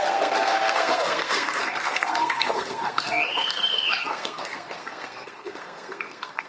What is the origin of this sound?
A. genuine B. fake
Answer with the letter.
B